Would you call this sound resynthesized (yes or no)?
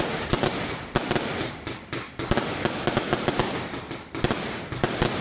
yes